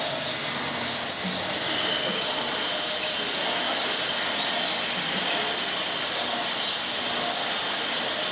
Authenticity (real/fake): real